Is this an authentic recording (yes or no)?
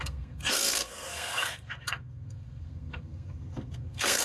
no